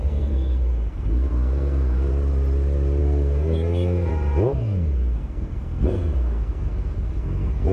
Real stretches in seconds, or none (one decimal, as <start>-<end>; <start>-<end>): 2.1-3.0; 4.1-4.6